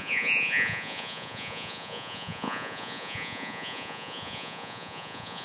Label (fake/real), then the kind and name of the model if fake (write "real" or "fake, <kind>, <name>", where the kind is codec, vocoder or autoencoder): fake, vocoder, Vocos